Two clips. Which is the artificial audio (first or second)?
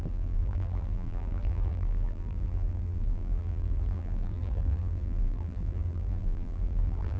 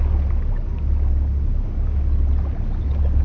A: first